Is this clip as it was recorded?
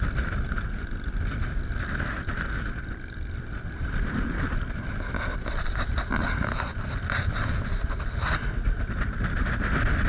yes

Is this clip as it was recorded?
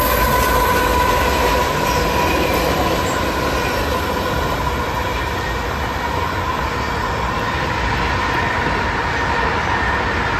yes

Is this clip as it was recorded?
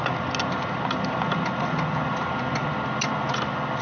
yes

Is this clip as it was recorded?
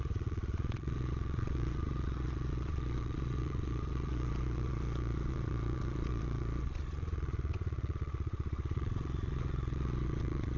no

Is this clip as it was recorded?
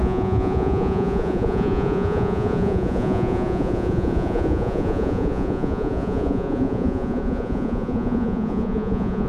no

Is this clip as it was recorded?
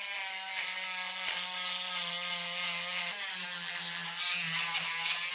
yes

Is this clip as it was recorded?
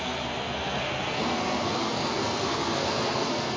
no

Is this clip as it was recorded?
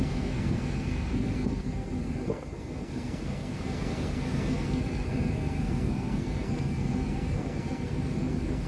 no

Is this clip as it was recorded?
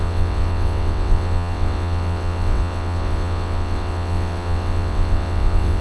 no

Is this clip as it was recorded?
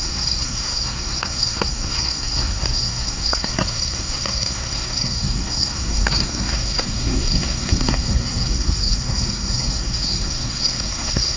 no